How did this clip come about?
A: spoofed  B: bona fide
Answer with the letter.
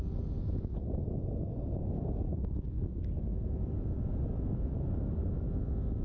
B